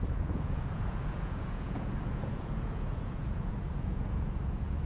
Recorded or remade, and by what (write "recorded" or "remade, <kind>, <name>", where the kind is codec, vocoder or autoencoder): remade, vocoder, Vocos